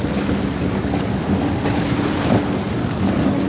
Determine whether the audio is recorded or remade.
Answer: recorded